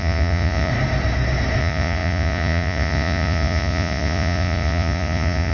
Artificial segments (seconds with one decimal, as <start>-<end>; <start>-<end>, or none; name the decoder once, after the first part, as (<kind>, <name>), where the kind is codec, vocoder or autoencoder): 0.0-0.7 (vocoder, Vocos); 1.6-5.5